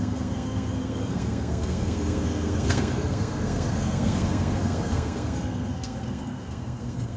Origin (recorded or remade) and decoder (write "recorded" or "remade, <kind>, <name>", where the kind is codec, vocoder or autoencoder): remade, codec, SNAC